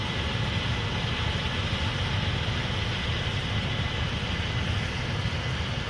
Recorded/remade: recorded